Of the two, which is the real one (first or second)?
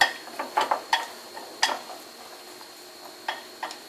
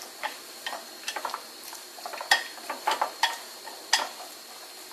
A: first